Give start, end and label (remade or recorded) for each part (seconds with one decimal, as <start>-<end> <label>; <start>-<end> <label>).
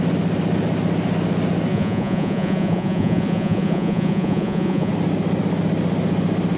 0.0-1.7 recorded; 1.7-4.9 remade; 4.9-6.6 recorded